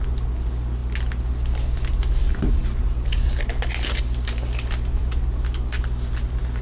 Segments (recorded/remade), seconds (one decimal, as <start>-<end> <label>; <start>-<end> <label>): 0.0-6.6 recorded